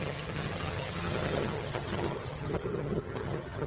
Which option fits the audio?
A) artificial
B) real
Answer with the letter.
A